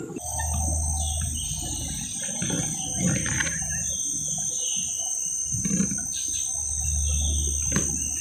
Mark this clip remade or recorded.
recorded